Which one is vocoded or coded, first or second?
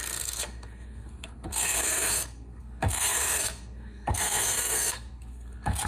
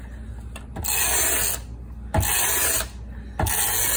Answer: first